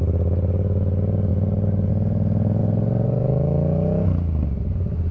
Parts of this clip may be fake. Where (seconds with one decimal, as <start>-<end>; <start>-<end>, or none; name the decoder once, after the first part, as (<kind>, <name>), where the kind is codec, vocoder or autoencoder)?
1.3-1.9 (vocoder, BigVGAN v2); 2.6-3.3